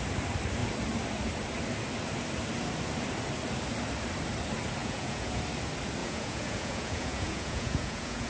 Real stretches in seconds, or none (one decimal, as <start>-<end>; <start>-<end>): 0.0-4.8; 5.4-6.0